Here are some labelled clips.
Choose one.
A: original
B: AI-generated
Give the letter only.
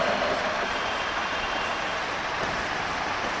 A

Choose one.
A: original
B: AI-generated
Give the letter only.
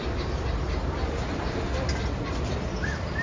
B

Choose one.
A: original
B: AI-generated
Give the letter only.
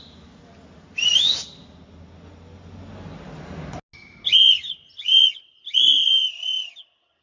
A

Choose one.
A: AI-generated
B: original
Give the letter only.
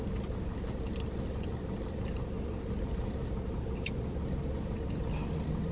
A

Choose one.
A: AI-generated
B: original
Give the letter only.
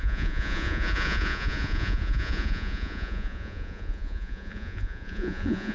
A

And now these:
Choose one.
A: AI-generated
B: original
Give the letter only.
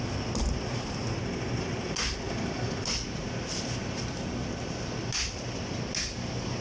B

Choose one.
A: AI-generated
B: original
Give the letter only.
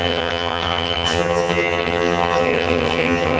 A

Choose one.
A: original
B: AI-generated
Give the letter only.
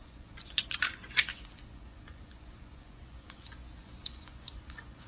B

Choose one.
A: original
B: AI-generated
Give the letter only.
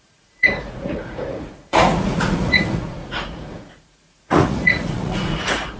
B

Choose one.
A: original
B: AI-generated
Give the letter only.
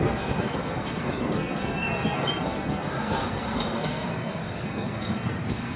B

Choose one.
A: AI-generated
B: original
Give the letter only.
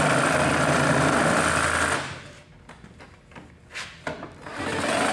B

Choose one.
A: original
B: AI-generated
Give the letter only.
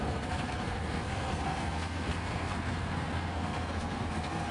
B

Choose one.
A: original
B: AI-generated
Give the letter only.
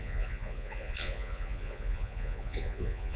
B